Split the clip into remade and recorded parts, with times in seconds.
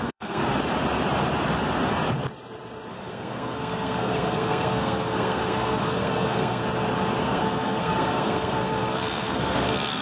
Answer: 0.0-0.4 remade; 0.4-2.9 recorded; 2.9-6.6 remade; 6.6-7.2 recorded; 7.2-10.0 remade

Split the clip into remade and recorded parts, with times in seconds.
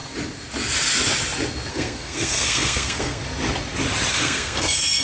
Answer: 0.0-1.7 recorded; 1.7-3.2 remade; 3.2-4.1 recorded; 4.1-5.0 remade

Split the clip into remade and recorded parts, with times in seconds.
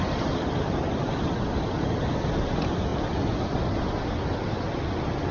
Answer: 0.0-5.3 recorded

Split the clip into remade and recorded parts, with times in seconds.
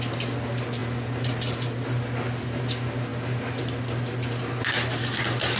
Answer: 0.0-5.6 recorded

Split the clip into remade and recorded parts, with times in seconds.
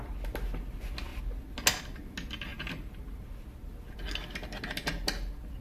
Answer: 0.0-2.5 recorded; 2.5-3.0 remade; 3.0-5.6 recorded